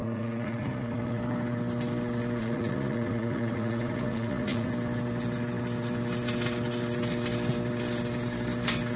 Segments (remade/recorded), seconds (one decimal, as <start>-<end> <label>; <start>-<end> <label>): 0.0-1.2 remade; 1.2-2.4 recorded; 2.4-4.7 remade; 4.7-9.0 recorded